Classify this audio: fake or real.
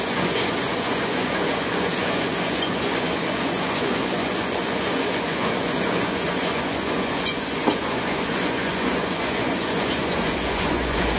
fake